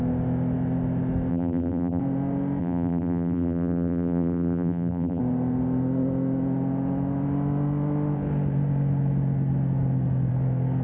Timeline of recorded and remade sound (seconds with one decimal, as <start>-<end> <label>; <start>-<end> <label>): 0.0-1.3 recorded; 1.3-2.0 remade; 2.0-2.6 recorded; 2.6-5.2 remade; 5.2-10.8 recorded